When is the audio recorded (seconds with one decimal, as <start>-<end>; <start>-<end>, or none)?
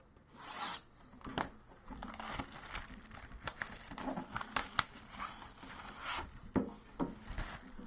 0.0-7.9